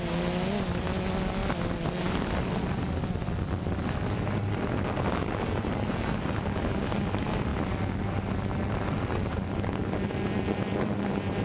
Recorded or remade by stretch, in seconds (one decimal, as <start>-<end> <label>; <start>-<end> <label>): 0.0-11.4 recorded